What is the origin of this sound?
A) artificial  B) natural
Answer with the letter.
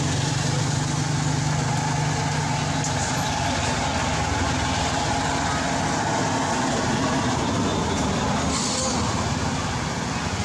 B